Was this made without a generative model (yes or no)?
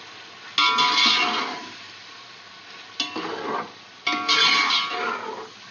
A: yes